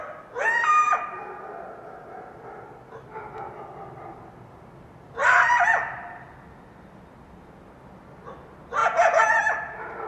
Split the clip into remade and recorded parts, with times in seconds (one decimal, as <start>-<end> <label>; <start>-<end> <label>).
0.0-8.8 recorded; 8.8-9.4 remade; 9.4-10.1 recorded